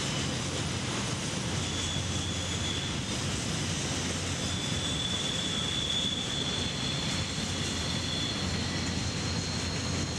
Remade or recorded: recorded